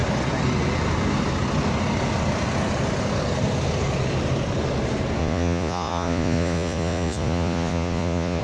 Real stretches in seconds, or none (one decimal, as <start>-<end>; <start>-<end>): 0.0-5.2